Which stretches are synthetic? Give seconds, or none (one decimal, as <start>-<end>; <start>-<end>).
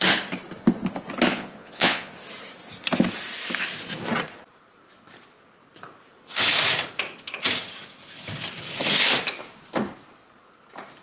1.3-2.1